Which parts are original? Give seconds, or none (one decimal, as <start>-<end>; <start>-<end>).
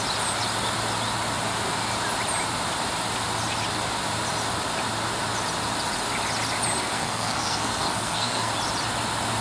0.0-6.8; 8.5-9.4